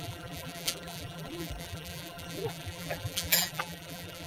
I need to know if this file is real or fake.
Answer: fake